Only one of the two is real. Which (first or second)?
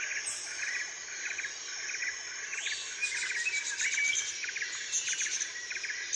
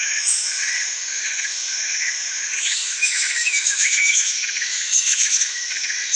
first